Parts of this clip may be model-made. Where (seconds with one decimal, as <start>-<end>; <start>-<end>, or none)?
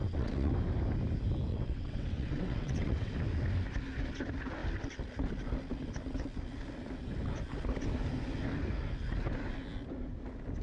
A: 0.0-0.5; 1.5-3.1